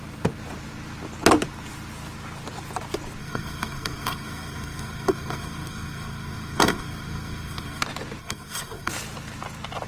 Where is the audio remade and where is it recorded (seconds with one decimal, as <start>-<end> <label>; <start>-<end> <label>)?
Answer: 0.0-3.2 recorded; 3.2-7.8 remade; 7.8-8.2 recorded; 8.2-8.9 remade; 8.9-9.9 recorded